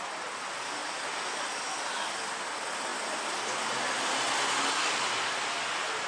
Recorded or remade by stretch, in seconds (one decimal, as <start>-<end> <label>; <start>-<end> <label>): 0.0-6.1 recorded